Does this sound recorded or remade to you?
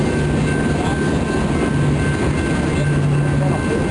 recorded